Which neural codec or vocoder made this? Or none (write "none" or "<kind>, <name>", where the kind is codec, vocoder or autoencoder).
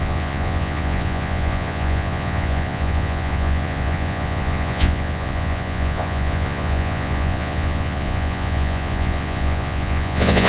vocoder, Vocos